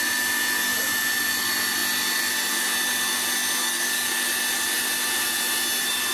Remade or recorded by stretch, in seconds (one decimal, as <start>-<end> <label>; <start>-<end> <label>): 0.0-3.6 recorded; 3.6-4.1 remade; 4.1-6.1 recorded